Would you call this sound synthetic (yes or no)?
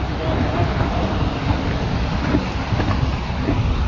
no